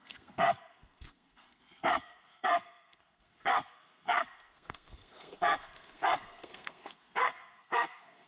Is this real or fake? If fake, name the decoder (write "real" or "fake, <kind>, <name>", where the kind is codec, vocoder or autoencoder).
fake, codec, SNAC